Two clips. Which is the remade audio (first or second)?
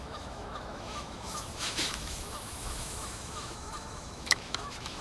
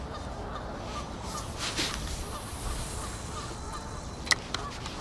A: first